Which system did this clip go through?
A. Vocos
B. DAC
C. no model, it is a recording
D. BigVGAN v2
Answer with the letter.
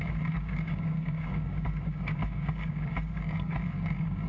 B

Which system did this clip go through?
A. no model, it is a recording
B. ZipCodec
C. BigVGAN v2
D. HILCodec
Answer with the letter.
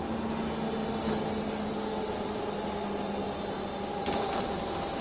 A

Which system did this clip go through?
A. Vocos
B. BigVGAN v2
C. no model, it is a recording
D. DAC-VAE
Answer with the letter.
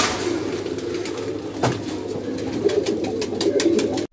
C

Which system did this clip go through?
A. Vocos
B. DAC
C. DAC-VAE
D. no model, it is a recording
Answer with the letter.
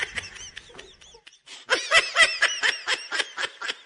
D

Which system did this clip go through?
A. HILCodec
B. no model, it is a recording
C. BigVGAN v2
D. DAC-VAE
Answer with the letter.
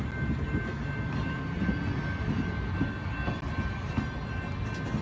B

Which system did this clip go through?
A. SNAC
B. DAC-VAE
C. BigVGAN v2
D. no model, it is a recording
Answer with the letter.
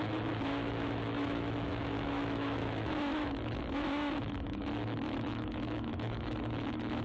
B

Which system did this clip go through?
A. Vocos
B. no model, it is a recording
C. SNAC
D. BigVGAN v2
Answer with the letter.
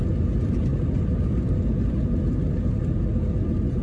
B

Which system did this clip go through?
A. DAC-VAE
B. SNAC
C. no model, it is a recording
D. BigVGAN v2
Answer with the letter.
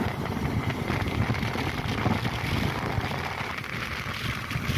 C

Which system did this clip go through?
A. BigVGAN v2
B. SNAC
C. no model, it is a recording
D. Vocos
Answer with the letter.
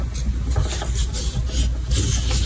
C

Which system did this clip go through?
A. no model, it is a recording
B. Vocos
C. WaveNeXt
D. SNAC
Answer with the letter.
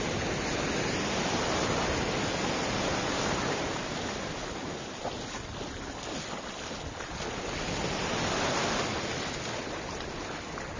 A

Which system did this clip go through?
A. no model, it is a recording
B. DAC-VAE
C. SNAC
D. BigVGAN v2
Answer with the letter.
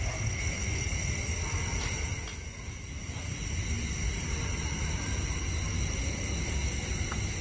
A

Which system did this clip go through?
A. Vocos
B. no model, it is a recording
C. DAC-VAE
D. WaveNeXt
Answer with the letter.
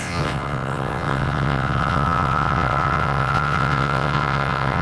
D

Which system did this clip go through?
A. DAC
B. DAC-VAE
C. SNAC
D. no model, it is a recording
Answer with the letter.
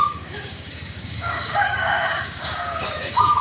A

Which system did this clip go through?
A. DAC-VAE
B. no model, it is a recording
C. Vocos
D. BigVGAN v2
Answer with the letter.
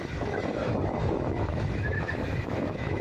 A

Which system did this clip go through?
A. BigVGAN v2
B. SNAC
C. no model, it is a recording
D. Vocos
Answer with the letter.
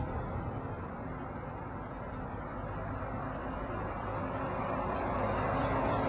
A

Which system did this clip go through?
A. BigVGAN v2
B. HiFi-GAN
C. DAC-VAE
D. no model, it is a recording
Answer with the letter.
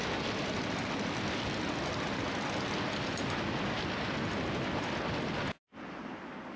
D